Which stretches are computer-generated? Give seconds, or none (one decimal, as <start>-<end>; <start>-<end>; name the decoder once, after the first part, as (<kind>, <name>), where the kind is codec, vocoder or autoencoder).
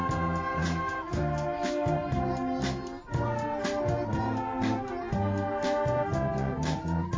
0.6-1.9 (autoencoder, DAC-VAE)